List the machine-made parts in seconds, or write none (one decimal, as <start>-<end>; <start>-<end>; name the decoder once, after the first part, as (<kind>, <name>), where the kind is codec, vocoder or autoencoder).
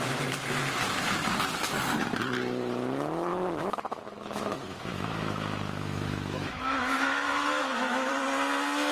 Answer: 3.3-8.1 (autoencoder, DAC-VAE)